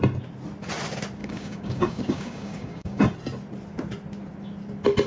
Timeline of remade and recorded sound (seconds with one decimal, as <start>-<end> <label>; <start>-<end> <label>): 0.0-1.2 recorded; 1.2-3.0 remade; 3.0-5.1 recorded